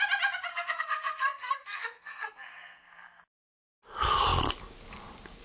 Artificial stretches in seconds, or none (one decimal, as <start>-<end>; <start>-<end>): 0.5-3.2